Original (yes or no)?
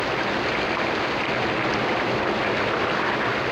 yes